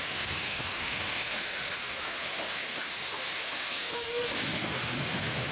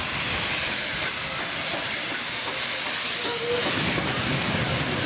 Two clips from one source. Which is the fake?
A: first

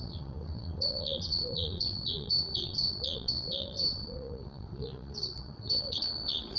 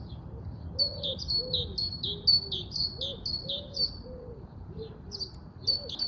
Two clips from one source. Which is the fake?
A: first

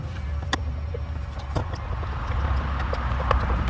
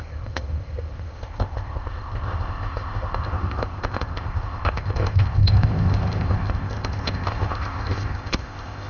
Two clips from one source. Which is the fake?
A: second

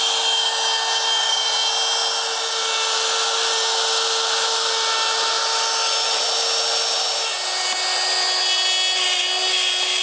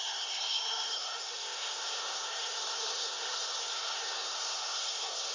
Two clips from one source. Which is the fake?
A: second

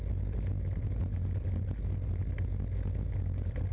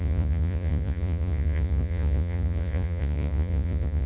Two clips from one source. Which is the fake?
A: second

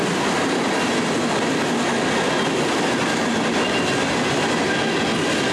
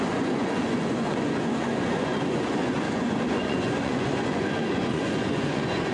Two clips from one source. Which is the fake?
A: second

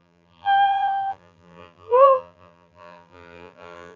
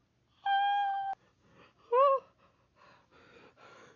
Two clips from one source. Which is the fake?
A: first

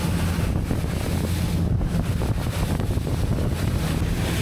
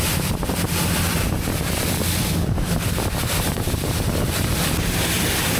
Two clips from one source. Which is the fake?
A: second